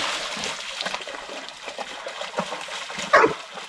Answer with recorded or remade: recorded